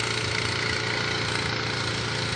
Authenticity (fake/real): real